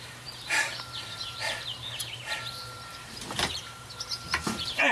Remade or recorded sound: remade